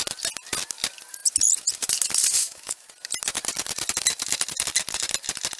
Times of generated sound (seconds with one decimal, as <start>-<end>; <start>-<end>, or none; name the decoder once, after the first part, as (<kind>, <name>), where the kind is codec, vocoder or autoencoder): 2.4-2.9 (autoencoder, DAC-VAE)